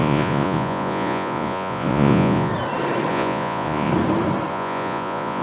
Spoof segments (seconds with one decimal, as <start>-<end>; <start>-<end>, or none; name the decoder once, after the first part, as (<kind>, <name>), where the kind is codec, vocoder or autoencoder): 0.0-2.5 (vocoder, Vocos); 3.1-3.9; 4.5-5.4